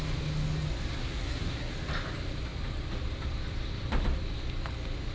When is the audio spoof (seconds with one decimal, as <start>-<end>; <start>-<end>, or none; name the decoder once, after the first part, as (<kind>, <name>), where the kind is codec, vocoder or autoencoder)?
1.0-1.7 (codec, SNAC)